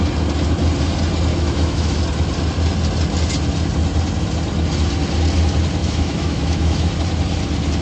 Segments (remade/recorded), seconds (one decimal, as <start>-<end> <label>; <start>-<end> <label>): 0.0-1.3 recorded; 1.3-2.0 remade; 2.0-5.8 recorded; 5.8-6.9 remade; 6.9-7.8 recorded